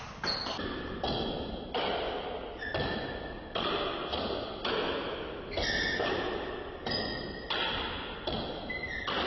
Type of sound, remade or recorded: recorded